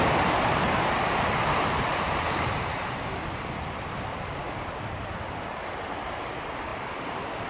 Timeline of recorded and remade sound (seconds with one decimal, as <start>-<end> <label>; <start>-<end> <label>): 0.0-7.5 remade